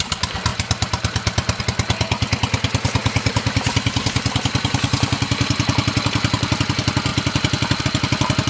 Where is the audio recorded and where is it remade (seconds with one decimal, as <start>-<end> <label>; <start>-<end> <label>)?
0.0-0.5 recorded; 0.5-1.6 remade; 1.6-3.0 recorded; 3.0-6.6 remade; 6.6-7.1 recorded; 7.1-7.8 remade; 7.8-8.5 recorded